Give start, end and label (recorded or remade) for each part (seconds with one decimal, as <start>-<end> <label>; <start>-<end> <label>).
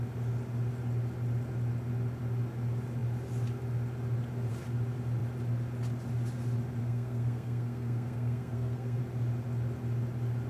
0.0-6.8 recorded; 6.8-9.0 remade; 9.0-10.5 recorded